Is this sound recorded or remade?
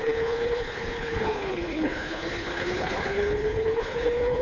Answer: remade